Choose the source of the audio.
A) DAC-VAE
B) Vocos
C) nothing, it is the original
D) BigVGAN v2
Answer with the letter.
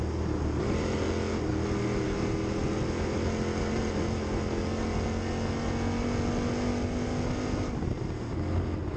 C